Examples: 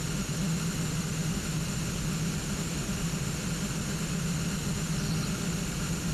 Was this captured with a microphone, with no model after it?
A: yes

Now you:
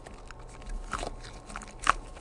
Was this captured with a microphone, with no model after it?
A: yes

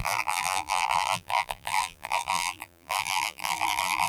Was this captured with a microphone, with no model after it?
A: no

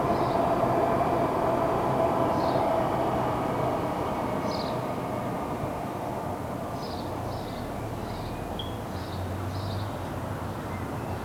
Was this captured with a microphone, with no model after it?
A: yes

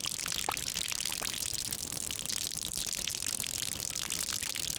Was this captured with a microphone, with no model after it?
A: yes